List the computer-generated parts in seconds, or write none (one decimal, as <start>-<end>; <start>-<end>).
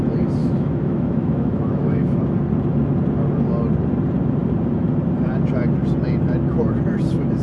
0.4-2.2